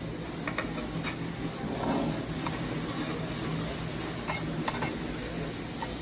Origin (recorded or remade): recorded